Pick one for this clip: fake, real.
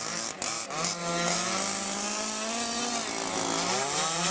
real